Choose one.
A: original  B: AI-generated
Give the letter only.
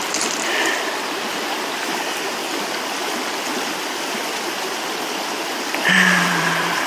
B